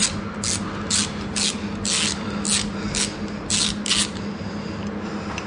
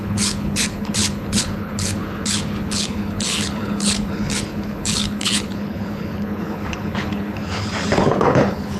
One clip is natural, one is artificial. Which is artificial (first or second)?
second